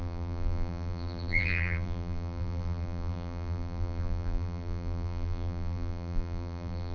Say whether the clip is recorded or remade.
remade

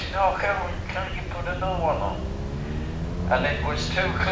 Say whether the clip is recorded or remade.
recorded